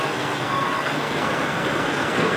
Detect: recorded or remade remade